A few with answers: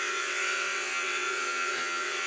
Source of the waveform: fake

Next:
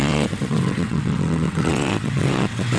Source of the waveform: fake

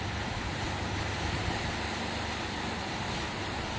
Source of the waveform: real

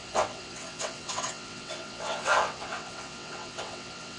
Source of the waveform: fake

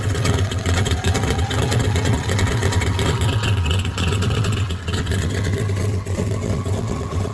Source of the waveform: fake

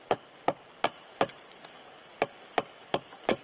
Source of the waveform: real